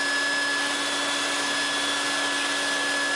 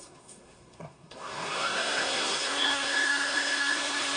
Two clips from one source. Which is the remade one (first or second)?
second